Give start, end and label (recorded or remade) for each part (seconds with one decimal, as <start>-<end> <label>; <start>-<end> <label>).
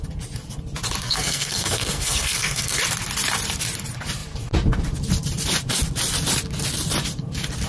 0.0-1.0 recorded; 1.0-2.8 remade; 2.8-7.7 recorded